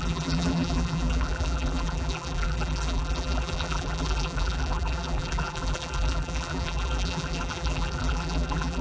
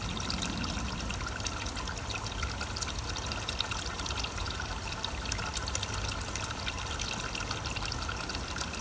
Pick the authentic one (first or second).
second